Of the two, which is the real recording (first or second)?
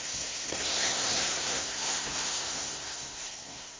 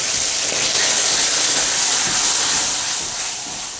second